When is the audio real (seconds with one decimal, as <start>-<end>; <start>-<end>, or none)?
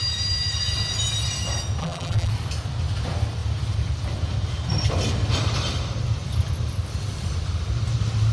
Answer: 0.0-1.8; 2.3-8.3